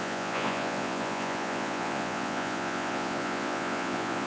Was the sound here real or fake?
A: fake